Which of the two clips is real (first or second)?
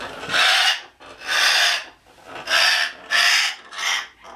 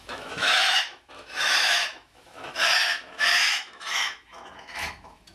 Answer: first